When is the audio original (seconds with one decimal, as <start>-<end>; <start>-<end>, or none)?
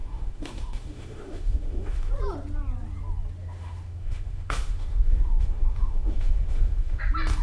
2.1-3.4; 7.0-7.4